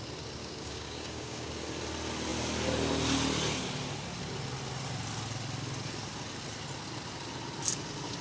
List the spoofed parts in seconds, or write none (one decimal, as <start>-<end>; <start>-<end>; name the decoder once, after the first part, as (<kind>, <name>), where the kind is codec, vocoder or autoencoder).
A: 0.4-1.5 (codec, DAC)